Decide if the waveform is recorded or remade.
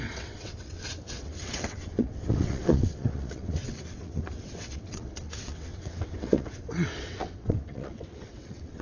remade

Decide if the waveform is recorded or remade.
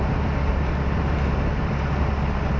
recorded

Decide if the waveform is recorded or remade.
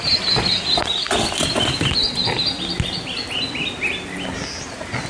recorded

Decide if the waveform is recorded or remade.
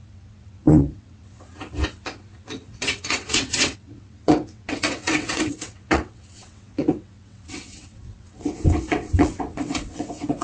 remade